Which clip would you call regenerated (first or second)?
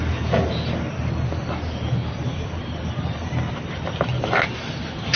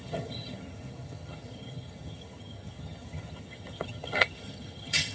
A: second